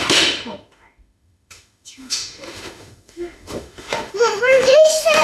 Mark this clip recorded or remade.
remade